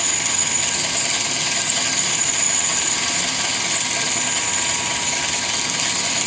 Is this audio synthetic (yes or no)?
no